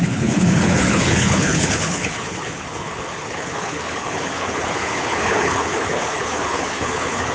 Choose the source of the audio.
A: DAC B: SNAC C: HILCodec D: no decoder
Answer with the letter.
C